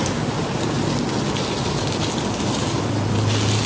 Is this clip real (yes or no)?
yes